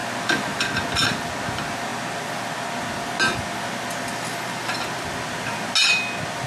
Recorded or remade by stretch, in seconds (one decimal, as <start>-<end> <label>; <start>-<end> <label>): 0.0-6.5 recorded